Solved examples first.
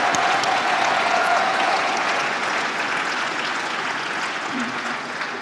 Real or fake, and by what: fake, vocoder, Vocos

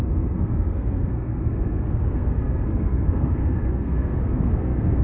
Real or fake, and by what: fake, codec, SNAC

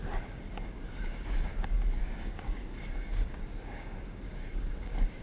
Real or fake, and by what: fake, codec, DAC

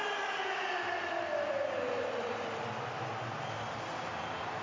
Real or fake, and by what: real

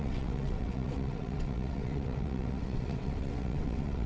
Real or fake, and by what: fake, vocoder, WaveNeXt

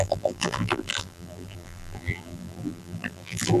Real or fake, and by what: fake, vocoder, BigVGAN v2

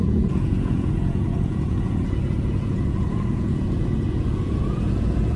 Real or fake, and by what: fake, vocoder, Vocos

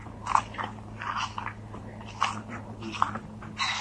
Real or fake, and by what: real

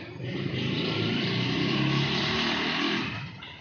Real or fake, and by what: real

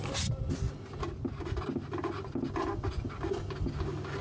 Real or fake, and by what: real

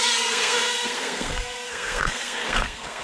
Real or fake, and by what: fake, codec, SNAC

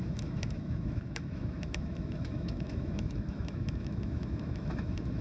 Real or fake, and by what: fake, autoencoder, DAC-VAE